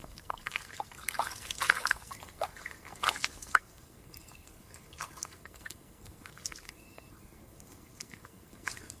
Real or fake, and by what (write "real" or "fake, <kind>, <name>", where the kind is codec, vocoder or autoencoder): fake, codec, SNAC